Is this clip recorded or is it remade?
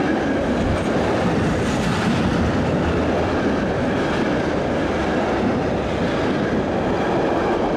recorded